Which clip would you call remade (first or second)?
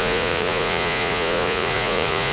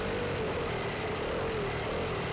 first